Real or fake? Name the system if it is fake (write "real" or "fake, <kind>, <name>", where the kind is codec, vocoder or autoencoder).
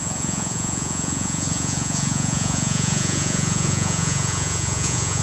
fake, vocoder, Vocos